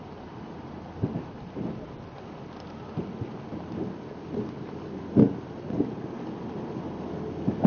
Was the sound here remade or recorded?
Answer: recorded